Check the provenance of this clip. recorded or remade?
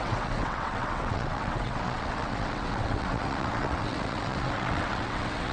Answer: remade